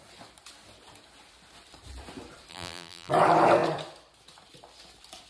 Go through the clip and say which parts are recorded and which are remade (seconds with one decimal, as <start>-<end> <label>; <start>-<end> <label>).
0.0-2.5 recorded; 2.5-3.1 remade; 3.1-5.3 recorded